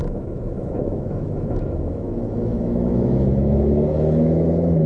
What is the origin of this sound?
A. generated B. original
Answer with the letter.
A